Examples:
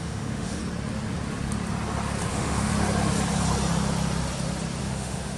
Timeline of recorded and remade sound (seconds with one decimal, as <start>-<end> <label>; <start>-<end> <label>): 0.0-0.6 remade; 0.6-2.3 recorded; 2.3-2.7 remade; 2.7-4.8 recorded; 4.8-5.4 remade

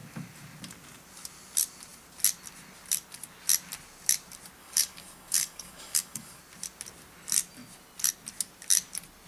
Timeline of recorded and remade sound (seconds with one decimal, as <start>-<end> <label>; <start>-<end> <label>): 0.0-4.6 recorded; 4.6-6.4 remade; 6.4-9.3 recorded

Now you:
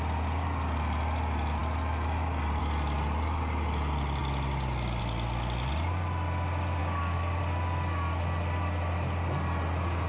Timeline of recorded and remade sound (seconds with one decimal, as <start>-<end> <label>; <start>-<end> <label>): 0.0-6.8 recorded; 6.8-7.4 remade; 7.4-10.1 recorded

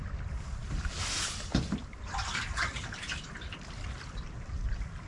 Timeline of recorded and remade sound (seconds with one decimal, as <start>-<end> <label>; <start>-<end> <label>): 0.0-5.1 remade

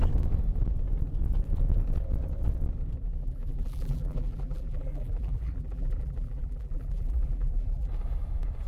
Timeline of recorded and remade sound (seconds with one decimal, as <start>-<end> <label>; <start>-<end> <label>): 0.0-3.2 recorded; 3.2-7.9 remade; 7.9-8.7 recorded